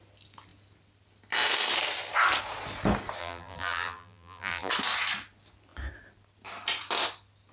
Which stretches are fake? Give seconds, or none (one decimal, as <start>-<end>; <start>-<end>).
3.2-4.7